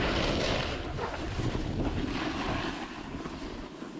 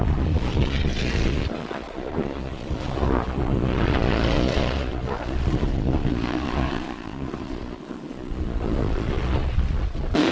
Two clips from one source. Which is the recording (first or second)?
first